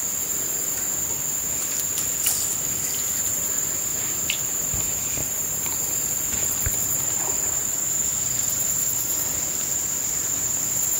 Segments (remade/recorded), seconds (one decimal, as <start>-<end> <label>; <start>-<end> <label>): 0.0-2.7 recorded; 2.7-11.0 remade